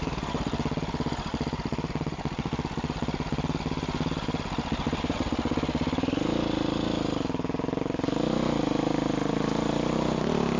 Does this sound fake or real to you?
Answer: real